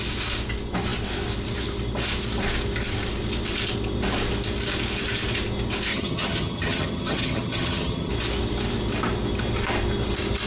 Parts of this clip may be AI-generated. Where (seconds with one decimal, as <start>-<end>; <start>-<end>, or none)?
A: 5.9-8.1